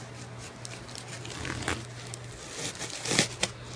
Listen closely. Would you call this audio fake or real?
real